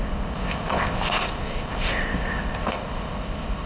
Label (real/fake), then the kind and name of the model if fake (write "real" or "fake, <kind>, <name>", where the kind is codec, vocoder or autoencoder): fake, codec, ZipCodec